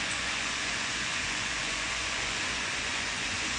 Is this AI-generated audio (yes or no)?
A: yes